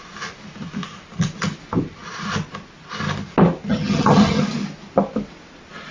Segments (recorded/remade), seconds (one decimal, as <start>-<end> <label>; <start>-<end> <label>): 0.0-3.7 recorded; 3.7-4.4 remade; 4.4-5.9 recorded